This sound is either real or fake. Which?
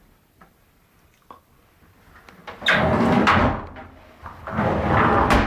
real